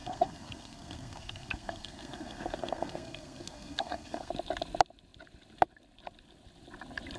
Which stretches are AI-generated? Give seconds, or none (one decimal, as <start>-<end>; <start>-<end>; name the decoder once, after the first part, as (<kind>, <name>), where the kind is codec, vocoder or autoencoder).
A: 0.0-4.3 (codec, SNAC)